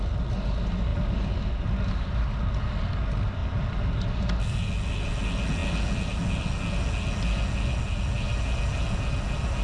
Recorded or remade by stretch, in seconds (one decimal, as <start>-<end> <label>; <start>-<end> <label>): 0.0-0.9 recorded; 0.9-2.2 remade; 2.2-9.6 recorded